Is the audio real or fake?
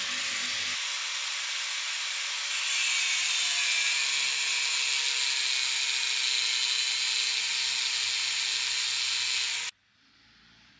real